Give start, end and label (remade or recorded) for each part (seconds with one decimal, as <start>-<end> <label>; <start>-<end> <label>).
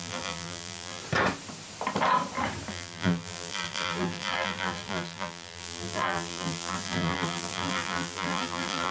0.0-1.0 remade; 1.0-2.7 recorded; 2.7-8.9 remade